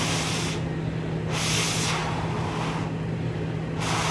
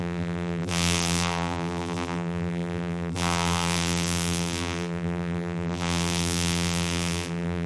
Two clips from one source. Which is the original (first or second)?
first